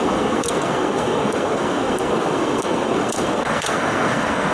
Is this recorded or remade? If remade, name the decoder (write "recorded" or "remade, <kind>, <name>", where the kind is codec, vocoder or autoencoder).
remade, codec, SNAC